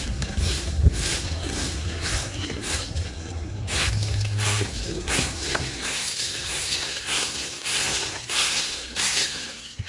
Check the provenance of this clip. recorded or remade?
remade